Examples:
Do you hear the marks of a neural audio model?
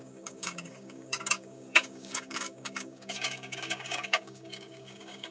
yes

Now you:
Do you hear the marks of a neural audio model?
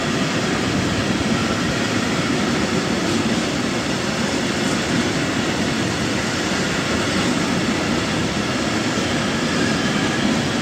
no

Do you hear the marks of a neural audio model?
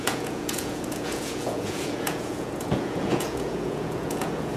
yes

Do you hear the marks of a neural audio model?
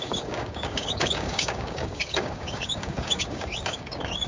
yes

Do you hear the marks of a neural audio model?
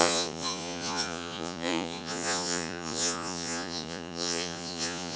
yes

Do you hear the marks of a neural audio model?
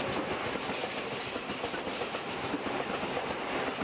no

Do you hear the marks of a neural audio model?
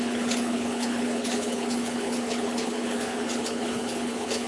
yes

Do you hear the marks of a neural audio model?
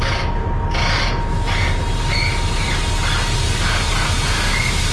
no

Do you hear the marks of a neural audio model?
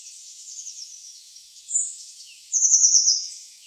yes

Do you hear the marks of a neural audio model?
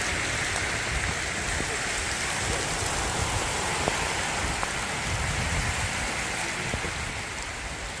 no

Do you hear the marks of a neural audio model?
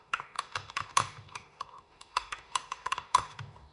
yes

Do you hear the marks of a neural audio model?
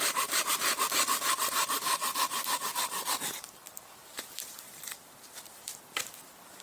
yes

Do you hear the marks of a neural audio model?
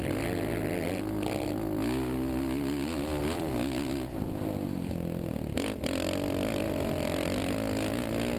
no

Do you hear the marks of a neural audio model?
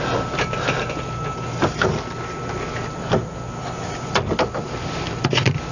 no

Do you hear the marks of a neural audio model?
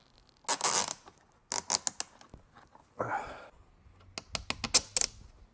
no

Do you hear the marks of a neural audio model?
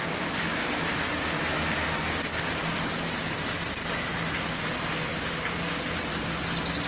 no